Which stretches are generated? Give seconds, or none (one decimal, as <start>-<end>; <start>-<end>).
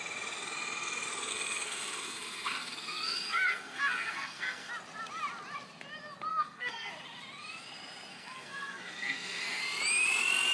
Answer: 1.3-4.7; 6.3-6.9; 8.1-9.6